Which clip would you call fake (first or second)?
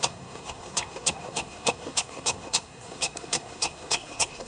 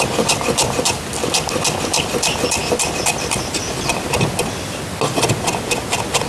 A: first